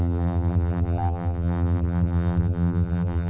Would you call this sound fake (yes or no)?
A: yes